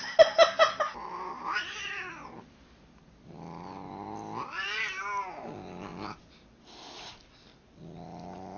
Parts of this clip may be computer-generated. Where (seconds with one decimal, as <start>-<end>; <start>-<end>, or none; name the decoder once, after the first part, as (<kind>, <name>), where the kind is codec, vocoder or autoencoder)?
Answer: none